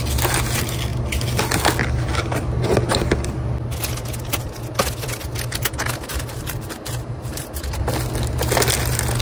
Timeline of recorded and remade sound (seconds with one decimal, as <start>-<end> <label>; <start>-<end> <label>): 0.0-6.1 recorded; 6.1-7.6 remade; 7.6-9.2 recorded